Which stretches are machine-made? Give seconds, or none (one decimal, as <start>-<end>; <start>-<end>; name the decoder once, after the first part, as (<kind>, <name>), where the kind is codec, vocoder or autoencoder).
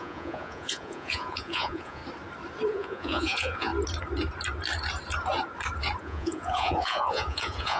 0.0-2.0 (vocoder, Vocos); 2.7-3.7; 6.0-7.8